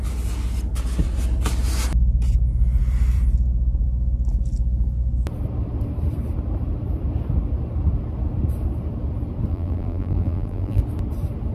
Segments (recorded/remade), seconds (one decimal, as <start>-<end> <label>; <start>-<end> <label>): 0.0-9.5 recorded; 9.5-10.8 remade; 10.8-11.5 recorded